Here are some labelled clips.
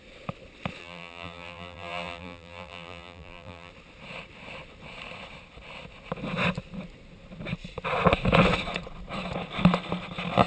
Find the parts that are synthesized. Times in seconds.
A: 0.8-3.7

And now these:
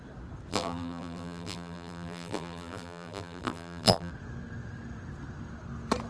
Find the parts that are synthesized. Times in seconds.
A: 0.5-4.1

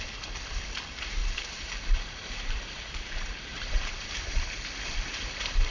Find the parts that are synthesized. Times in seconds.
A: 1.2-4.1

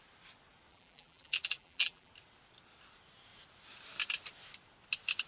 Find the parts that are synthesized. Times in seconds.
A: 0.7-2.1

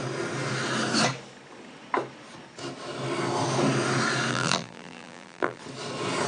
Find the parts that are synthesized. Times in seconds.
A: 4.3-5.6

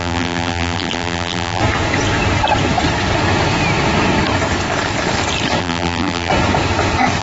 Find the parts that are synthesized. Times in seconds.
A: 0.0-1.6; 5.6-6.3

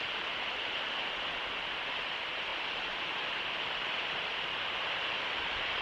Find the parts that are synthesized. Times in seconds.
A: 0.0-5.8